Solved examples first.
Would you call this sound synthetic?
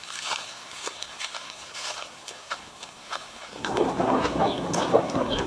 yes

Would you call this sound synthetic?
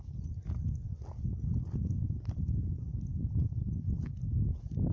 no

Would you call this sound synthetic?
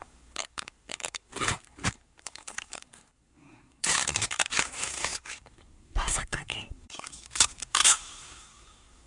yes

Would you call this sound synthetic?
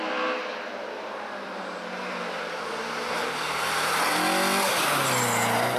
no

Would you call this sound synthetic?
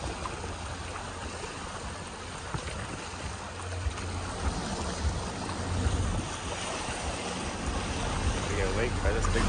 no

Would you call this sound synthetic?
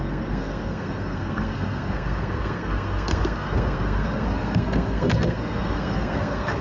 yes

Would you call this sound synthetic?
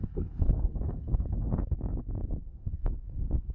yes